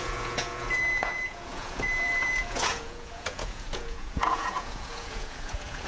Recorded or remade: remade